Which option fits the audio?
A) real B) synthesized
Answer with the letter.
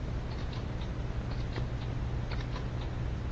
A